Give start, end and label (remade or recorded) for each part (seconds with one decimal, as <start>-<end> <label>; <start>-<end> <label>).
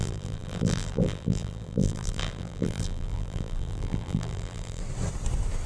0.0-4.8 remade; 4.8-5.7 recorded